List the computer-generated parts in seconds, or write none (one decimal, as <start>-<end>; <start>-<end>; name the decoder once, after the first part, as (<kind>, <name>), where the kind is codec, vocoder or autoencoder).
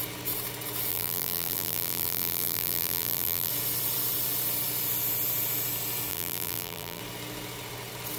0.9-3.5 (vocoder, BigVGAN v2); 6.1-7.0